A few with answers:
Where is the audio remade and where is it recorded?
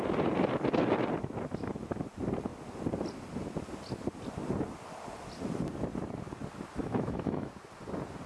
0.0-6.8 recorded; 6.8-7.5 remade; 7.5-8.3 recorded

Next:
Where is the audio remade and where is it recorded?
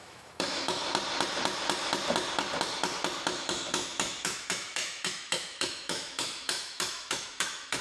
0.0-0.8 remade; 0.8-3.4 recorded; 3.4-7.8 remade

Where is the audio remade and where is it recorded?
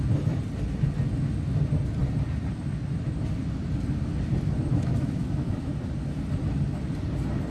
0.0-4.7 recorded; 4.7-5.7 remade; 5.7-7.5 recorded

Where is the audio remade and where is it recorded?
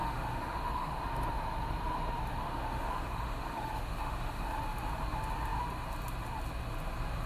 0.0-1.0 remade; 1.0-2.3 recorded; 2.3-4.6 remade; 4.6-7.3 recorded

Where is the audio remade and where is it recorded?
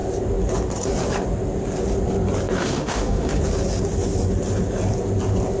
0.0-2.6 recorded; 2.6-3.4 remade; 3.4-5.6 recorded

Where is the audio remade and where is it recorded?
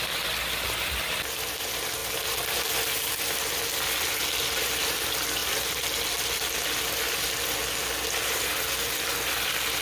0.0-9.8 recorded